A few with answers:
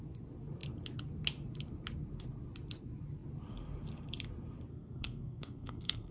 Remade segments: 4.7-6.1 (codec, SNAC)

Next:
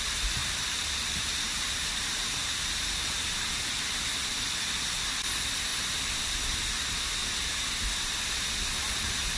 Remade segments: 0.4-3.8 (vocoder, BigVGAN v2); 5.7-6.6; 7.2-7.8